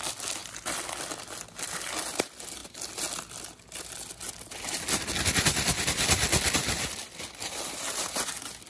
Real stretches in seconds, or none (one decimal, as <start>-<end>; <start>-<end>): 0.0-8.7